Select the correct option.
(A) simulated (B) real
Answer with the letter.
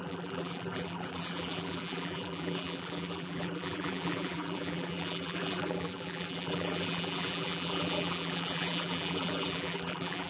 A